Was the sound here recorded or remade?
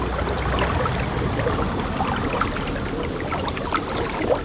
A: recorded